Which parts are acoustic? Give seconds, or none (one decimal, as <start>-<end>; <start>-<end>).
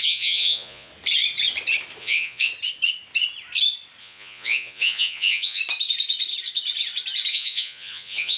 0.9-2.0; 2.5-4.0; 5.6-7.3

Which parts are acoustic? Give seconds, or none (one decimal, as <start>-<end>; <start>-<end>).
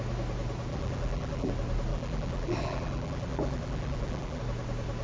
0.0-0.7; 1.5-1.9; 4.4-5.0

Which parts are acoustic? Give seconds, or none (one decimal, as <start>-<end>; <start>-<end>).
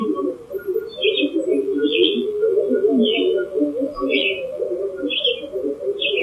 0.0-1.5; 4.6-6.2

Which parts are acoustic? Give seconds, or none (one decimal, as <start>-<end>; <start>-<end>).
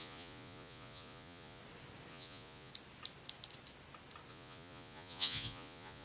1.6-2.1; 2.7-4.3